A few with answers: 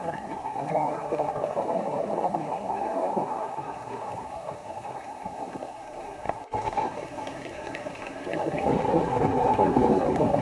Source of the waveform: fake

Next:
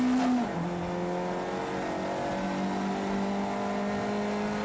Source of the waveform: real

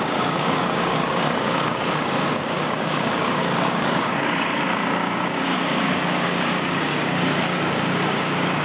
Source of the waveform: fake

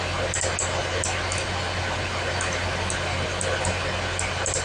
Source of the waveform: real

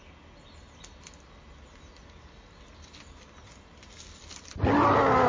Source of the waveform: real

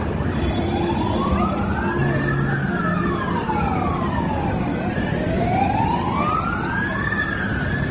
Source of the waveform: real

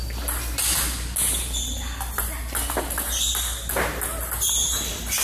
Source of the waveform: real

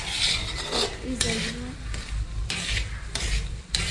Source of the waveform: real